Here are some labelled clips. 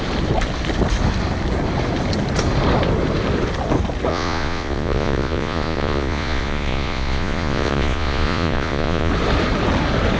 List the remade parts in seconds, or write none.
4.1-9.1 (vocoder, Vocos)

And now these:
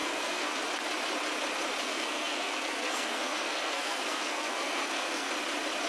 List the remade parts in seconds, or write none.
0.0-0.6 (codec, SNAC); 1.8-5.3

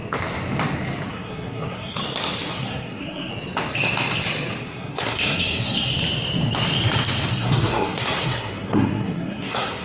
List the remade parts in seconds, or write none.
1.1-2.0 (codec, SNAC); 2.5-3.3; 4.6-5.9; 7.3-9.8

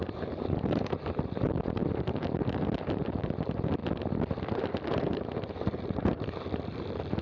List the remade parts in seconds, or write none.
0.0-3.8 (vocoder, BigVGAN v2); 4.9-7.2

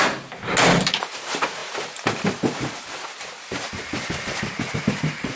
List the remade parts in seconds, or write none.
none

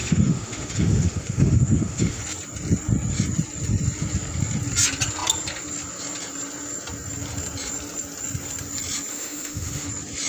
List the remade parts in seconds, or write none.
0.0-2.2 (autoencoder, DAC-VAE); 9.1-9.9

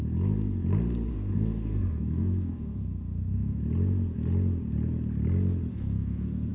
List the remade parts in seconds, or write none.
1.1-3.6 (codec, SNAC); 5.7-6.5

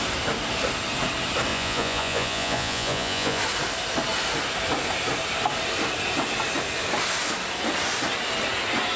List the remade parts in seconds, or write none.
1.5-3.4 (vocoder, Vocos)